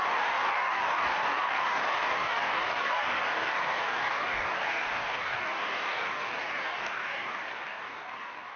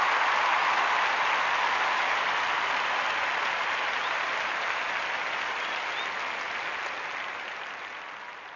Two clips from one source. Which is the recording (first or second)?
second